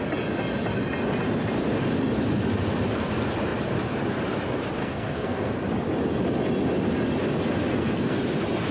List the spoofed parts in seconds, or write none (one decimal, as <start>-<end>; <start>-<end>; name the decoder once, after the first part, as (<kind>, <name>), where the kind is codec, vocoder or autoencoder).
4.8-5.5 (codec, SNAC); 7.7-8.2